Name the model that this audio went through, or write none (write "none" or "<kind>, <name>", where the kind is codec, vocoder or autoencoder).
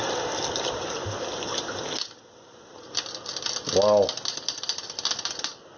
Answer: none